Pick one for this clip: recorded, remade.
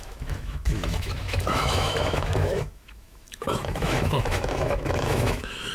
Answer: remade